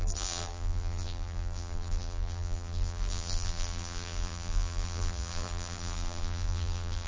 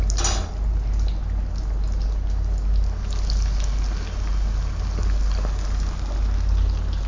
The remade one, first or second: first